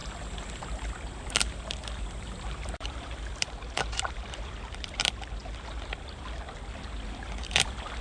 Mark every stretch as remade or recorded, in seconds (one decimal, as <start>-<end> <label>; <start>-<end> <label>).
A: 0.0-5.4 remade; 5.4-7.4 recorded; 7.4-8.0 remade